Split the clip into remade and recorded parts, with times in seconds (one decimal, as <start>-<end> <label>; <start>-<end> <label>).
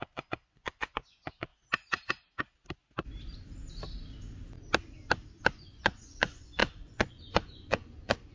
0.0-1.5 remade; 1.5-5.4 recorded; 5.4-8.3 remade